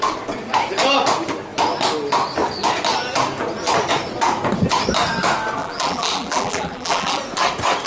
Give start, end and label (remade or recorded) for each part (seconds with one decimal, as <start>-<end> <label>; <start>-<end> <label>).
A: 0.0-5.6 recorded; 5.6-7.2 remade; 7.2-7.9 recorded